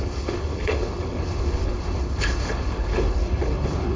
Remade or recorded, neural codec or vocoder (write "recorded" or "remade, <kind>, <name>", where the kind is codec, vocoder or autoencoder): remade, codec, HILCodec